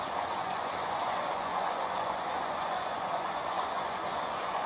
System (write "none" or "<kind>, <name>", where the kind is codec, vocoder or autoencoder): vocoder, Vocos